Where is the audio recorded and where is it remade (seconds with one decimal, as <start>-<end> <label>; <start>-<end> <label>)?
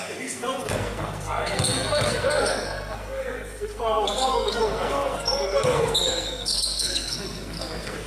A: 0.0-8.1 remade